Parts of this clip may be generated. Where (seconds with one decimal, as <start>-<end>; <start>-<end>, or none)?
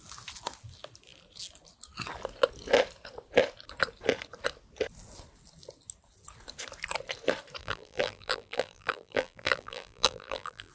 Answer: 7.6-10.7